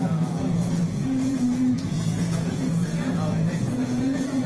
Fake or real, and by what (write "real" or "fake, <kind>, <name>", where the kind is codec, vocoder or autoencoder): fake, vocoder, Vocos